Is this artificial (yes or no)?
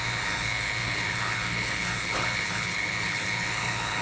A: yes